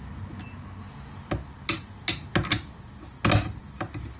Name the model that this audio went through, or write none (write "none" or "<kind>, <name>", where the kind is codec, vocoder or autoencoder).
none